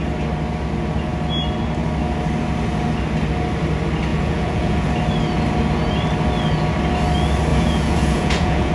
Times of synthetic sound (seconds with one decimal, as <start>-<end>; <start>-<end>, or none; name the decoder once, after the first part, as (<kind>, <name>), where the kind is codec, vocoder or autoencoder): 4.1-4.9 (vocoder, Vocos); 7.5-8.7